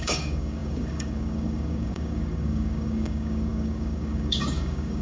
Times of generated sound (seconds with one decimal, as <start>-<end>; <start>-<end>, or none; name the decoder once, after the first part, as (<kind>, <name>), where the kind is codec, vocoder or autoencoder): 0.0-5.0 (codec, DAC)